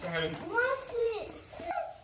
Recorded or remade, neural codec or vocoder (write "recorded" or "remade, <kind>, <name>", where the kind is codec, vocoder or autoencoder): remade, vocoder, Vocos